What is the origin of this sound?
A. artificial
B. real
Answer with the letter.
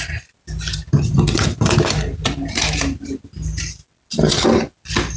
B